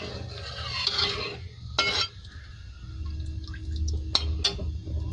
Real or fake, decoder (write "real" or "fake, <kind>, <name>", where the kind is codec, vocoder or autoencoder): real